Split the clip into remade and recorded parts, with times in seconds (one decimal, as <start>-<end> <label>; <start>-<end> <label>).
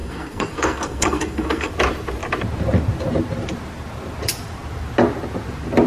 0.0-1.7 remade; 1.7-5.9 recorded